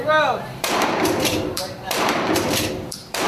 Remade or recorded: remade